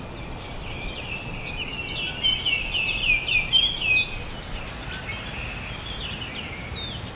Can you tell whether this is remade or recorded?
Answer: recorded